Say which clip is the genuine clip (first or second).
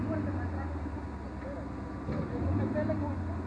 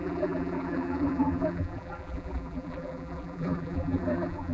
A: first